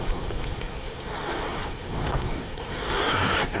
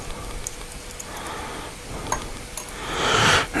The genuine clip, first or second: second